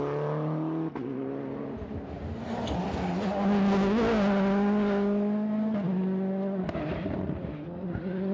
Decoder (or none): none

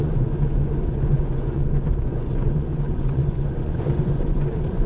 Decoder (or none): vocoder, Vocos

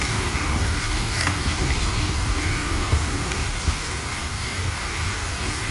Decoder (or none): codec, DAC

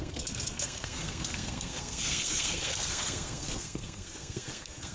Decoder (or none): codec, SNAC